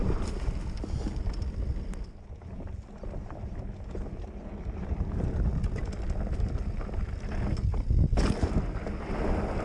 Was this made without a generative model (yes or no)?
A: yes